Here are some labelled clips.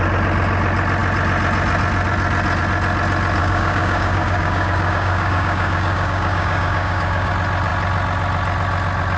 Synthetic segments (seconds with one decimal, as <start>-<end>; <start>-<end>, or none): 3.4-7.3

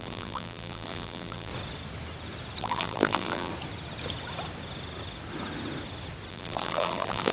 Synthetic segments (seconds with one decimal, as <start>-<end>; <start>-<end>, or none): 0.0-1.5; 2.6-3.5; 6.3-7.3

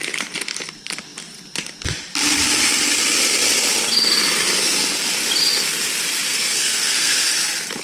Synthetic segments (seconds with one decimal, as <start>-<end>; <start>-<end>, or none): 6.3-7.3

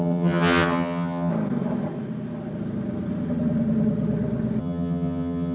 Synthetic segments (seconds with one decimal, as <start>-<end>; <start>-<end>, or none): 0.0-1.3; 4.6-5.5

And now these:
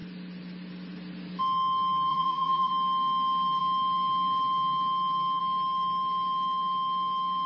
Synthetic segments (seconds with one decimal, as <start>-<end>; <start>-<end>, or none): 2.1-2.7